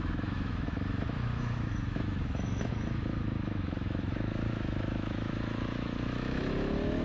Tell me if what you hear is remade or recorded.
remade